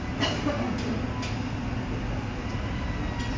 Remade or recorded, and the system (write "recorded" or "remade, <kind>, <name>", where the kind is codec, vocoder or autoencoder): recorded